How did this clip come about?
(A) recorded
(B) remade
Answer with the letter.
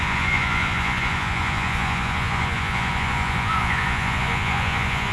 B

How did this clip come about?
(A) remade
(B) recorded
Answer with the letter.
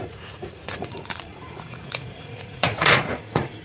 A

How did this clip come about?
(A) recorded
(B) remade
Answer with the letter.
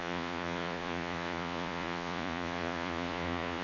B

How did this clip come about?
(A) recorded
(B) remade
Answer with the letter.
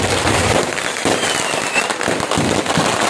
A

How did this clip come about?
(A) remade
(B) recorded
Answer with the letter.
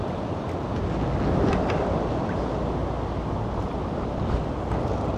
B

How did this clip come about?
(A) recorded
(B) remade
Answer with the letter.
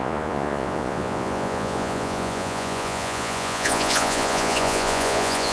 B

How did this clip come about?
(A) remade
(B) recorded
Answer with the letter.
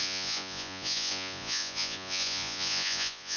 A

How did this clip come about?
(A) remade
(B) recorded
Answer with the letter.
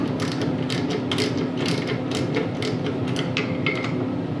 B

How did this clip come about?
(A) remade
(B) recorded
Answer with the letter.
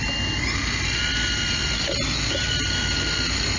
B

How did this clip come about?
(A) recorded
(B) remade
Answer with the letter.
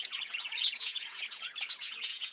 B